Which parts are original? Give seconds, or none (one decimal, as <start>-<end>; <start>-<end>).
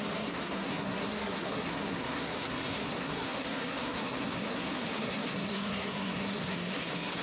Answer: none